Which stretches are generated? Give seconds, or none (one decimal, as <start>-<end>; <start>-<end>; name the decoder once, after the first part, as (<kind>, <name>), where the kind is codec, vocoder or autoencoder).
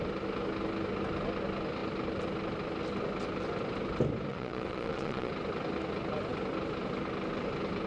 4.3-5.3 (vocoder, Vocos)